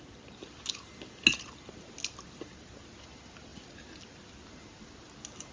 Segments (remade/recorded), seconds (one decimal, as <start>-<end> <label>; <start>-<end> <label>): 0.0-5.5 recorded